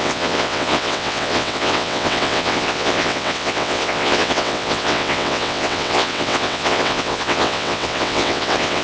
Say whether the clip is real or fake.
fake